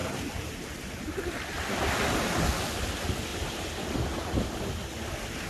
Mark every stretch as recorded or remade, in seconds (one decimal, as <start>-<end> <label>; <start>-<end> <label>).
0.0-1.1 remade; 1.1-3.3 recorded; 3.3-4.6 remade; 4.6-5.5 recorded